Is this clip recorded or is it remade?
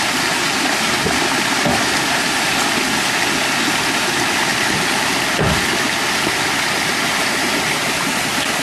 recorded